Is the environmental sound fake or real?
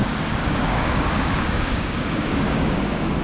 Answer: fake